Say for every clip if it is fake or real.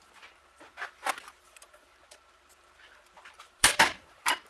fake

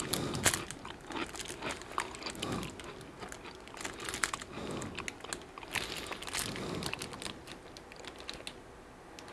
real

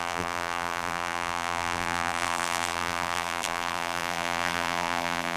fake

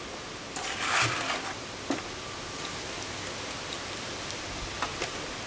real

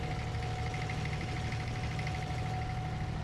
real